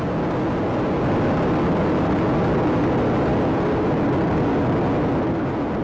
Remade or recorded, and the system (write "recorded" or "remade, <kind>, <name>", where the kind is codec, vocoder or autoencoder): recorded